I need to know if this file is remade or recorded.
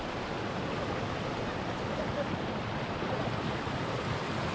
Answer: recorded